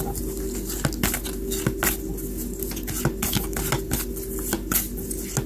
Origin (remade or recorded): recorded